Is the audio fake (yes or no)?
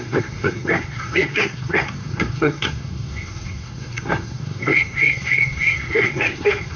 yes